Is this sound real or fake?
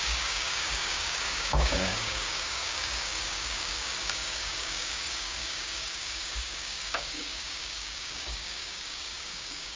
fake